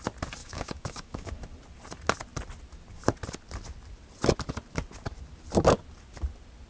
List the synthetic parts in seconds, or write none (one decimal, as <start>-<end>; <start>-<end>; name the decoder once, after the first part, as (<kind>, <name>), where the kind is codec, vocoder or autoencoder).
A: 0.4-1.3 (autoencoder, DAC-VAE)